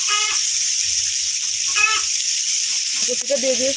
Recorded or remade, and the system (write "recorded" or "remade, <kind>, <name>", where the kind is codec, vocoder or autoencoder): recorded